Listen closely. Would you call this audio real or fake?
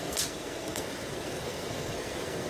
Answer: fake